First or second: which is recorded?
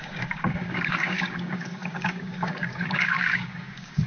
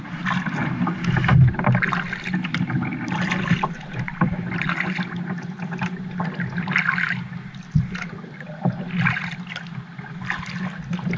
second